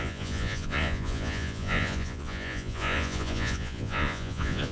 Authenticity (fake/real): fake